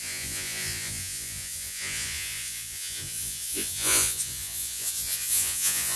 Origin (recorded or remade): remade